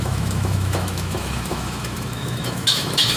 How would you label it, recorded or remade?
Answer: remade